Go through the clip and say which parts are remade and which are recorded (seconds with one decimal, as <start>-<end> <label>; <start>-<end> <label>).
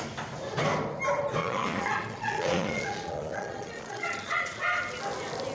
0.0-1.4 recorded; 1.4-4.6 remade; 4.6-5.5 recorded